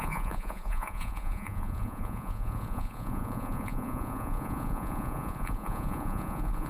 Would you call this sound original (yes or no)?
no